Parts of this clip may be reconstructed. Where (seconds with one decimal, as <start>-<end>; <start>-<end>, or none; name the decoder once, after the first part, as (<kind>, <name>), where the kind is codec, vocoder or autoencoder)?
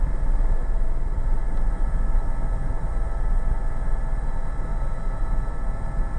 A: 0.0-6.2 (vocoder, BigVGAN v2)